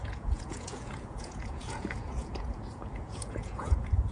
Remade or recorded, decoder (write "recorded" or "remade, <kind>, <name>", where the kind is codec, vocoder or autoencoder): remade, vocoder, Vocos